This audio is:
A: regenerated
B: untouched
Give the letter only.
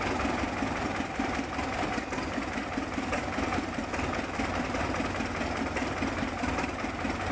B